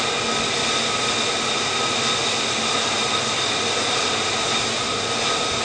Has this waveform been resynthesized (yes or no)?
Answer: no